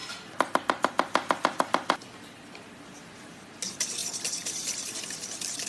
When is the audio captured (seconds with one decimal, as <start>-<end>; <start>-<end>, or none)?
0.0-5.7